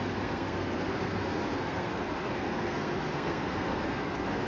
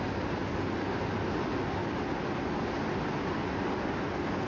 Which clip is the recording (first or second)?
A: second